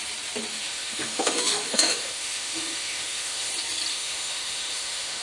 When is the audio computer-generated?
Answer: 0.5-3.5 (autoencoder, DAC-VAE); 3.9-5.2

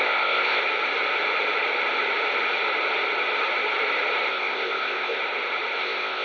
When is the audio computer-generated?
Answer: 0.0-0.6 (codec, ZipCodec); 4.3-5.2; 5.8-6.2

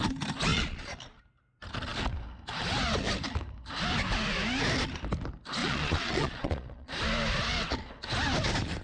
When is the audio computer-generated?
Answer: 0.5-1.0 (vocoder, Vocos); 5.6-6.9

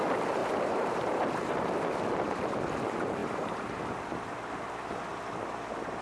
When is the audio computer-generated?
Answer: 0.4-1.2 (vocoder, BigVGAN v2); 3.2-5.0